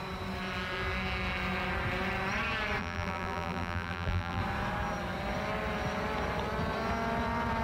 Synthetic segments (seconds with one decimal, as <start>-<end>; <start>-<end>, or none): 2.8-4.4